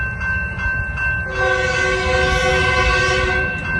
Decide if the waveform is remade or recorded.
recorded